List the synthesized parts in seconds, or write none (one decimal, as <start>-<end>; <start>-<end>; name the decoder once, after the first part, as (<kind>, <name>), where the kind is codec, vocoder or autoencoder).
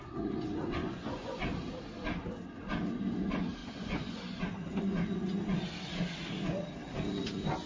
0.8-1.4 (vocoder, Vocos); 3.6-4.4